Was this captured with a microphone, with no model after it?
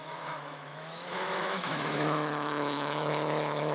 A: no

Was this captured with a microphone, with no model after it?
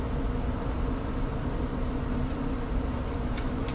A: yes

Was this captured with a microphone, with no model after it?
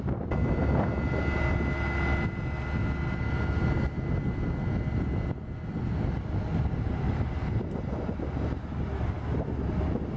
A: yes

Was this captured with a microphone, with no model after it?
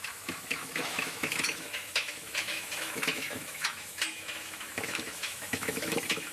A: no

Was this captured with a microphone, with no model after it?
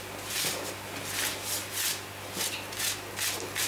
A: yes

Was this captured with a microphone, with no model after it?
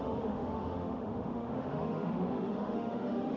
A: no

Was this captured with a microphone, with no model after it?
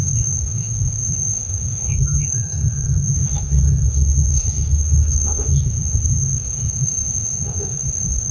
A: no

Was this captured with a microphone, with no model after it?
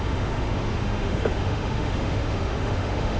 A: no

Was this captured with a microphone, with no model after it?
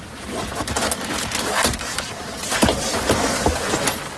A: yes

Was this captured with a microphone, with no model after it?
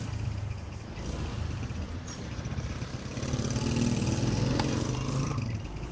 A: yes